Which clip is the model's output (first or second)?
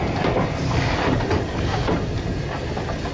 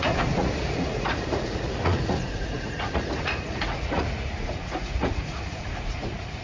second